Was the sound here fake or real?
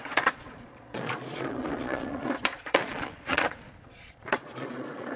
fake